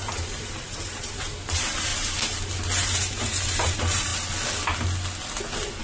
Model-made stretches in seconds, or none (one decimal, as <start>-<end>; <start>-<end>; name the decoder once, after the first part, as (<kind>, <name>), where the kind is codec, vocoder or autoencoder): 0.0-1.9 (vocoder, BigVGAN v2); 2.8-4.1